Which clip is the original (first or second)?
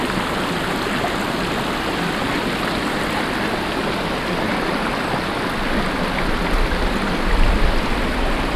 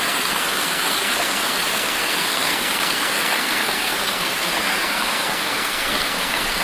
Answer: first